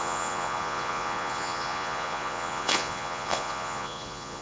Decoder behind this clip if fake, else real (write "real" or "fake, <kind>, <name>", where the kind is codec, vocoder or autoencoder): fake, vocoder, Vocos